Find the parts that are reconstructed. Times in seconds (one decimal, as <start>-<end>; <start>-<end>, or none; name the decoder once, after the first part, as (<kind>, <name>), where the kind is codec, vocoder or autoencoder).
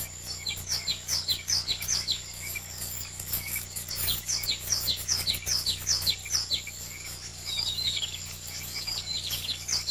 0.0-6.2 (codec, DAC); 6.8-9.9